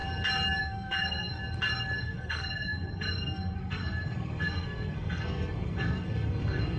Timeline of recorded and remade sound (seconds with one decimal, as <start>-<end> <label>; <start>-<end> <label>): 0.0-0.6 recorded; 0.6-1.4 remade; 1.4-2.0 recorded; 2.0-6.8 remade